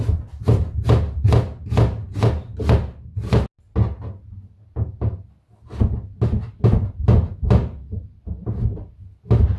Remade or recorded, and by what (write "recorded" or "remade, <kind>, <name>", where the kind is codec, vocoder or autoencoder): recorded